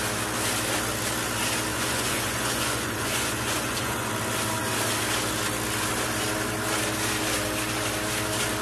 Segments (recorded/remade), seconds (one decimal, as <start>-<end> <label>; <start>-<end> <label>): 0.0-1.7 recorded; 1.7-4.1 remade; 4.1-8.6 recorded